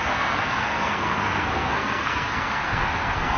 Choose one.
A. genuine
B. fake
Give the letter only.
B